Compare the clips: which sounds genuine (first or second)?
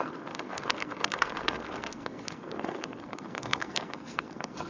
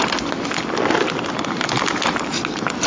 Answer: second